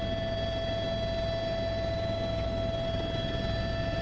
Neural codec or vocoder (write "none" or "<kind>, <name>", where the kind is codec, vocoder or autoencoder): none